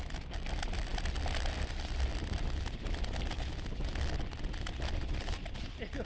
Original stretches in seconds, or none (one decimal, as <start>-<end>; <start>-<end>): 0.0-6.0